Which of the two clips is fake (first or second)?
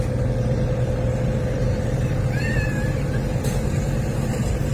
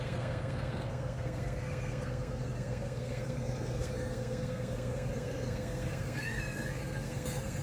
second